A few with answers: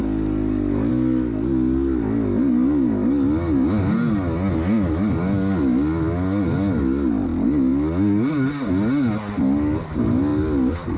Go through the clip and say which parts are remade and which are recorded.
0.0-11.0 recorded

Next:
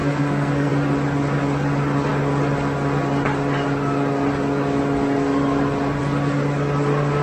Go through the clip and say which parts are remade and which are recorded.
0.0-0.7 remade; 0.7-7.2 recorded

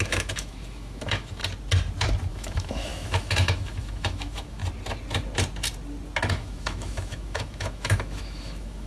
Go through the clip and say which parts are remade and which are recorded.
0.0-1.4 remade; 1.4-2.3 recorded; 2.3-4.6 remade; 4.6-6.3 recorded; 6.3-8.9 remade

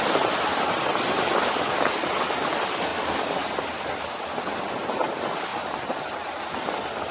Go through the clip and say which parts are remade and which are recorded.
0.0-0.8 recorded; 0.8-2.0 remade; 2.0-5.5 recorded; 5.5-6.2 remade; 6.2-7.1 recorded